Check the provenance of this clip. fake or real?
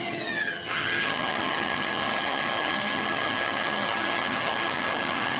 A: fake